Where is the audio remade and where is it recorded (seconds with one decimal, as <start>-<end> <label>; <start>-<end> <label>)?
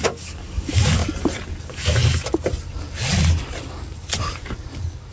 0.0-1.0 remade; 1.0-1.6 recorded; 1.6-2.0 remade; 2.0-5.1 recorded